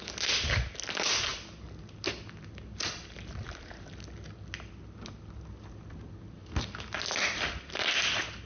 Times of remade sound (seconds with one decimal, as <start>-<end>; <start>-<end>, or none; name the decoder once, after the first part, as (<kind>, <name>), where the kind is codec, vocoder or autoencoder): none